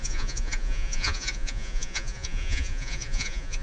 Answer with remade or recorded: remade